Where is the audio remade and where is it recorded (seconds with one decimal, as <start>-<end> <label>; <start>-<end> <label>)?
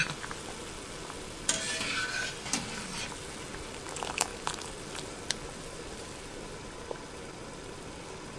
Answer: 0.0-8.4 recorded